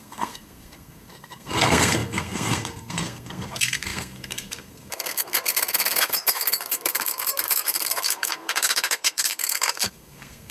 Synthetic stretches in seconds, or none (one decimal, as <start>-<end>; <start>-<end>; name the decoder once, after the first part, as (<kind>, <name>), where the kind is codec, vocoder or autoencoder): 0.0-10.5 (codec, SNAC)